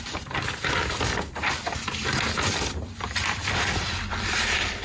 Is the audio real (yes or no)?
no